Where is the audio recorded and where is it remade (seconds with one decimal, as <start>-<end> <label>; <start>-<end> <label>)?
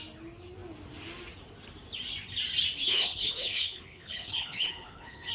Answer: 0.0-2.8 recorded; 2.8-5.3 remade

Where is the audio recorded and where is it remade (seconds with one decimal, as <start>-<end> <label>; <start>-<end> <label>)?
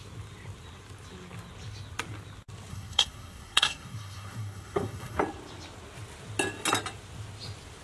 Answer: 0.0-2.7 recorded; 2.7-5.2 remade; 5.2-7.8 recorded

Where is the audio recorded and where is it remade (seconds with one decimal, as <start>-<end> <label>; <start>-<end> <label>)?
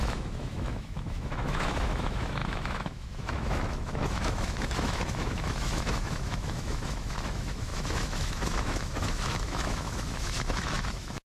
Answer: 0.0-11.2 remade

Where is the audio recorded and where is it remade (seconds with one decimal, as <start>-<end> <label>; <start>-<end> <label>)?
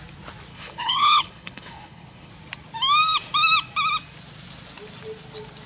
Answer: 0.0-0.5 recorded; 0.5-2.3 remade; 2.3-5.7 recorded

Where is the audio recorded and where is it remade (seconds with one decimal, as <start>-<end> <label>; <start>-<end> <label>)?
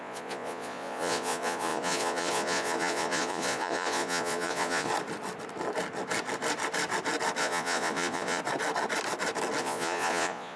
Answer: 0.0-4.9 remade; 4.9-7.4 recorded; 7.4-8.4 remade; 8.4-9.6 recorded; 9.6-10.6 remade